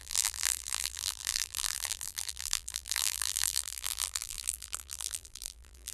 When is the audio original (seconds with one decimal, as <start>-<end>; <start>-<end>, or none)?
none

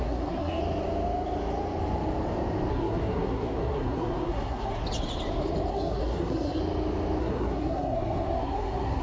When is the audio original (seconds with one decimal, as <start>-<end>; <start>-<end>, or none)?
0.6-2.7; 4.8-5.7; 6.6-7.2